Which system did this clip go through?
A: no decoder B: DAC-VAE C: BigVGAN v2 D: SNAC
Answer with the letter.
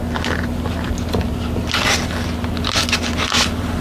A